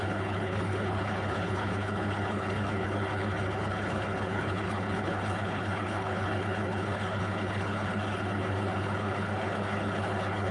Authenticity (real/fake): fake